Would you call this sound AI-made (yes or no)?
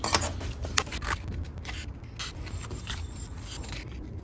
no